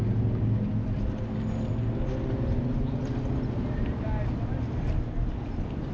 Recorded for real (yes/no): yes